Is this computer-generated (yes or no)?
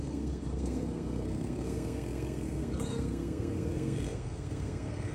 yes